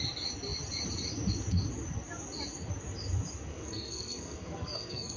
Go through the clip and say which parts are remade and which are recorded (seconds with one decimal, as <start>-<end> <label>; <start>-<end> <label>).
0.0-3.5 recorded; 3.5-5.2 remade